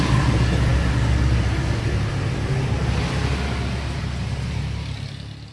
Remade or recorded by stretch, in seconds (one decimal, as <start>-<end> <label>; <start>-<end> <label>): 0.0-5.5 recorded